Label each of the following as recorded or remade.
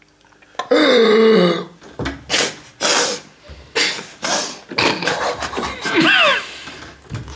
recorded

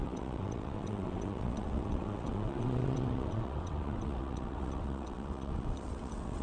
remade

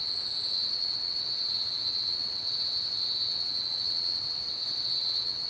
remade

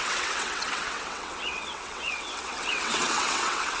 remade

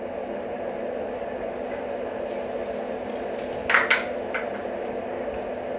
recorded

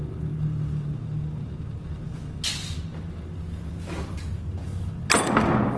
recorded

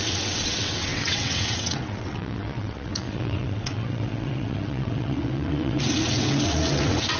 remade